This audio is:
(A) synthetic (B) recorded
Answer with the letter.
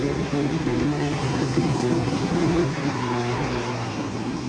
A